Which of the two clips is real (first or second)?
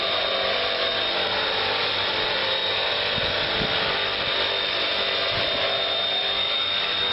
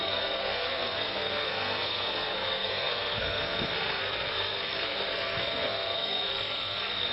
first